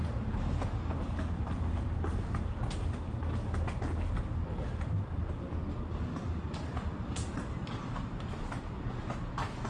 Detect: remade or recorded recorded